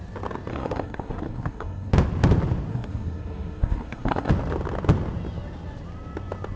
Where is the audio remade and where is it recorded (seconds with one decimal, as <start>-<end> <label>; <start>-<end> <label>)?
0.0-0.5 recorded; 0.5-1.9 remade; 1.9-2.7 recorded; 2.7-4.3 remade; 4.3-6.6 recorded